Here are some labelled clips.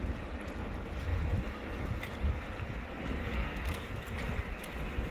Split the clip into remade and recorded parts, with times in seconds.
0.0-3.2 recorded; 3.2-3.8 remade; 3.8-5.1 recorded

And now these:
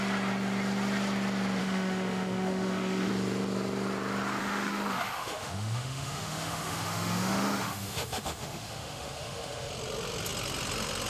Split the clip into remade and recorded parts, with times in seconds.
0.0-1.6 recorded; 1.6-3.1 remade; 3.1-4.4 recorded; 4.4-9.7 remade; 9.7-11.1 recorded

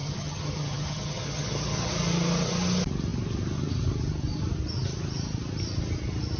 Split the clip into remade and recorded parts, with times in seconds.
0.0-1.9 remade; 1.9-6.4 recorded

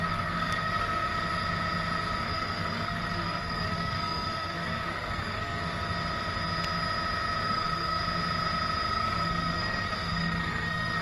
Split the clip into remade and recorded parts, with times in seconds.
0.0-1.1 remade; 1.1-2.2 recorded; 2.2-5.6 remade; 5.6-7.4 recorded; 7.4-8.0 remade; 8.0-8.9 recorded; 8.9-11.0 remade